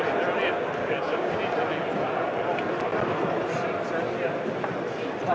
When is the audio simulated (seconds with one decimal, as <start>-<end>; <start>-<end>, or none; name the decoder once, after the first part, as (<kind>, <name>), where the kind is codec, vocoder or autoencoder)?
0.8-1.3 (codec, DAC)